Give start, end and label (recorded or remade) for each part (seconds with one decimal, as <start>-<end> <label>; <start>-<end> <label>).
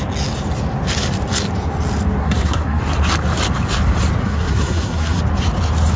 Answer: 0.0-2.2 recorded; 2.2-2.8 remade; 2.8-4.2 recorded; 4.2-5.2 remade; 5.2-6.0 recorded